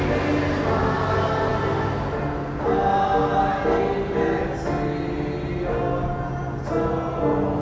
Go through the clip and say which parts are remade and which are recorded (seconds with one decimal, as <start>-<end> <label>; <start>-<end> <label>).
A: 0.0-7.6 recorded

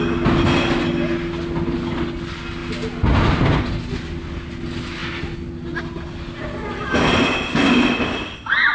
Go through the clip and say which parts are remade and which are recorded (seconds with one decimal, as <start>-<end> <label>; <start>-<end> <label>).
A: 0.0-8.7 recorded

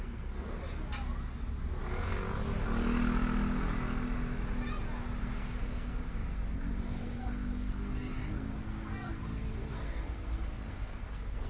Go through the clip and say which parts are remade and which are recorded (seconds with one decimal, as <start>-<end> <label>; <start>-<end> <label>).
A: 0.0-0.6 remade; 0.6-5.2 recorded; 5.2-11.5 remade